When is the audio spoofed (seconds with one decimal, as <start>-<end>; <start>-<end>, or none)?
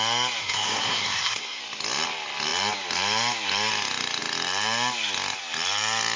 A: 0.4-1.6